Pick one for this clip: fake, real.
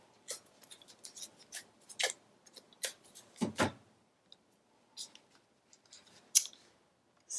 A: real